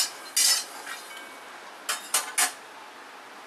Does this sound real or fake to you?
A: real